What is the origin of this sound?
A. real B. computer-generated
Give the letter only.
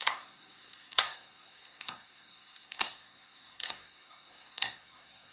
B